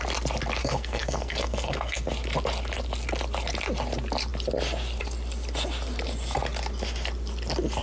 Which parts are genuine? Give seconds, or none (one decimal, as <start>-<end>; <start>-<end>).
0.0-0.6; 2.0-7.8